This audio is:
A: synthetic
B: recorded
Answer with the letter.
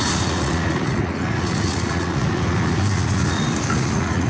A